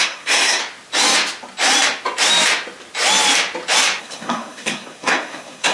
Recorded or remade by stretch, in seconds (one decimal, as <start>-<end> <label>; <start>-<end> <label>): 0.0-0.6 remade; 0.6-4.0 recorded; 4.0-5.7 remade